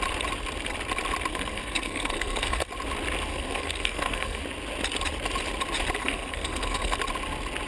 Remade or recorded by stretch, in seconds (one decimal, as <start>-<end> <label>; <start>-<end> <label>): 0.0-1.3 recorded; 1.3-2.7 remade; 2.7-3.3 recorded; 3.3-4.4 remade; 4.4-6.0 recorded; 6.0-7.0 remade; 7.0-7.7 recorded